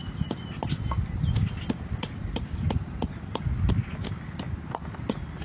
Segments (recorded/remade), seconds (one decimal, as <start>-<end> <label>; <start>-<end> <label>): 0.0-5.4 recorded